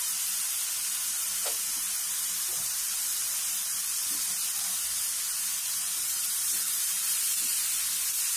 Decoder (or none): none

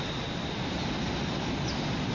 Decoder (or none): none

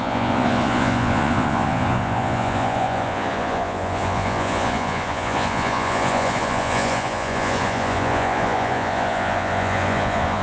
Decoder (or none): vocoder, Vocos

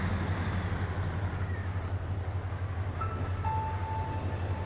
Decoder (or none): none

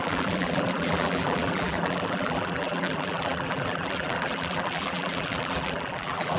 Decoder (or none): vocoder, BigVGAN v2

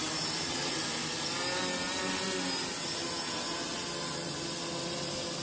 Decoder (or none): none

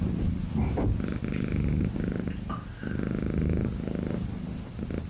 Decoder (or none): none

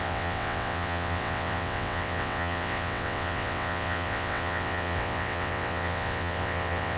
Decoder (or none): vocoder, WaveNeXt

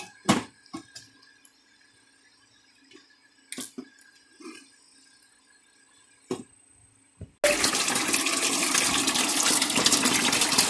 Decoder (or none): none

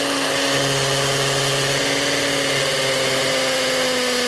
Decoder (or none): none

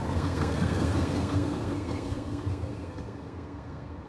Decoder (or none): codec, SNAC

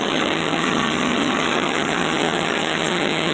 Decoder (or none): vocoder, HiFi-GAN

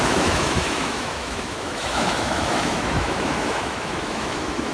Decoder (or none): autoencoder, DAC-VAE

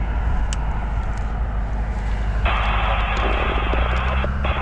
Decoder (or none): none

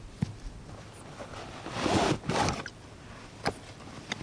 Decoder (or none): none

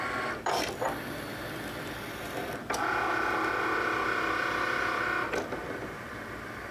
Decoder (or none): vocoder, BigVGAN v2